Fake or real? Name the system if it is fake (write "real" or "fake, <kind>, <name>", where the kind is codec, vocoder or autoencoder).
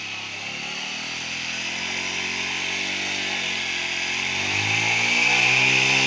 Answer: real